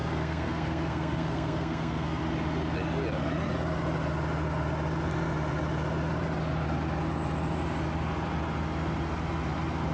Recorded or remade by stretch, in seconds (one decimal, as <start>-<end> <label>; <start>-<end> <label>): 0.0-2.2 remade; 2.2-9.9 recorded